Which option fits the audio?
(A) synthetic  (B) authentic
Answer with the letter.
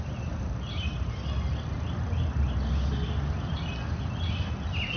B